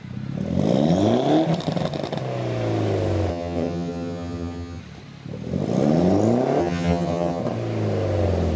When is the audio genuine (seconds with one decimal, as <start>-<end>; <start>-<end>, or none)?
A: 0.0-3.3; 4.8-6.6; 7.4-8.6

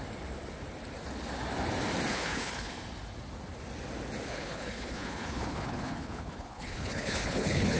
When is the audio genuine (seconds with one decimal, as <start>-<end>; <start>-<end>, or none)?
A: 0.0-2.1; 2.7-4.3

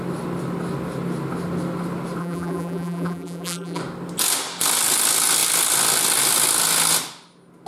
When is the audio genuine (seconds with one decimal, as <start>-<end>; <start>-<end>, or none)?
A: 0.0-2.2; 3.8-7.7

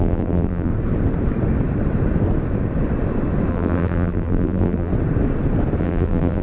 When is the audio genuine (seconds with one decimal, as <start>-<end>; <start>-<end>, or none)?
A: 0.7-3.5; 4.9-5.8

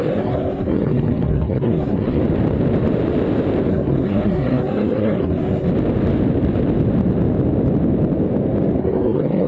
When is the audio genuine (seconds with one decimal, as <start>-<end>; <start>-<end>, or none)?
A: 2.2-3.7; 5.7-8.8

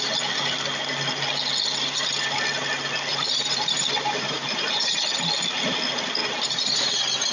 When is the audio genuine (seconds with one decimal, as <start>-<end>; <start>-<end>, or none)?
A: 0.0-3.1; 5.0-6.2

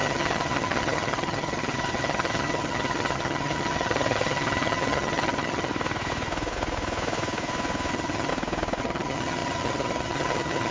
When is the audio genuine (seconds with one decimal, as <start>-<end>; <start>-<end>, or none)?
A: 5.7-7.9; 8.3-8.8

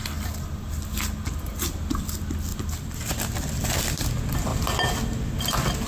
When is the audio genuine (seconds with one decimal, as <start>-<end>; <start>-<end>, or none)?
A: 0.0-5.9